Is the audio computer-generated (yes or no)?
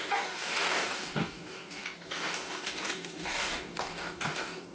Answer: yes